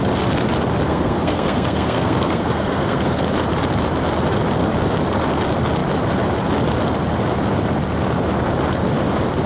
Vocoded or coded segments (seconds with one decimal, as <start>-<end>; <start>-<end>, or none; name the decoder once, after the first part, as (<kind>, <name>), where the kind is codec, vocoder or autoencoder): 0.8-3.2 (codec, SNAC)